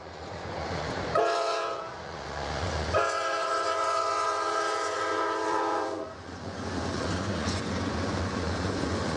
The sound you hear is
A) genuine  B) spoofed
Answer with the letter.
B